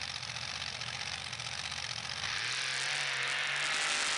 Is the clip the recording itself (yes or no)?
yes